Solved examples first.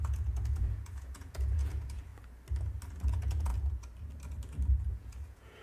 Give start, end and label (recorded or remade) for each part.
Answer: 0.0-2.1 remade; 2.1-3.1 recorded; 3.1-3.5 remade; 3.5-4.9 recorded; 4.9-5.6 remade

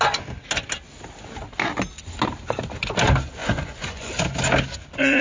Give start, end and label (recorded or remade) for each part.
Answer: 0.0-3.4 recorded; 3.4-4.1 remade; 4.1-5.2 recorded

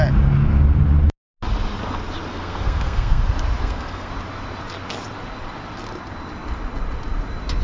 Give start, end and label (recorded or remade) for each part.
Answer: 0.0-2.3 recorded; 2.3-3.2 remade; 3.2-3.6 recorded; 3.6-4.1 remade; 4.1-7.6 recorded

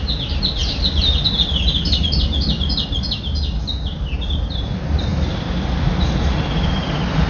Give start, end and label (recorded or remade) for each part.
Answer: 0.0-7.3 recorded

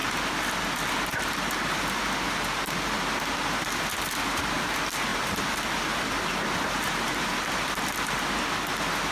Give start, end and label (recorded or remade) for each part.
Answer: 0.0-5.1 recorded; 5.1-7.8 remade; 7.8-9.1 recorded

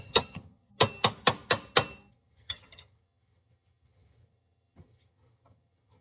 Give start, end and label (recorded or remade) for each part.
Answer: 0.0-0.7 remade; 0.7-2.1 recorded; 2.1-6.0 remade

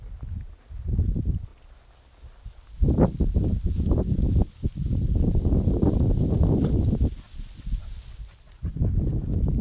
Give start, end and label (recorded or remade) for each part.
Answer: 0.0-9.6 recorded

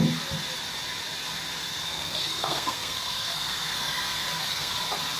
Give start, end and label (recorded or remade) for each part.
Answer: 0.0-1.6 recorded; 1.6-4.7 remade; 4.7-5.2 recorded